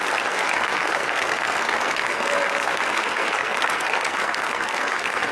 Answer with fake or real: fake